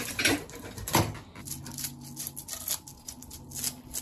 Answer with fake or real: real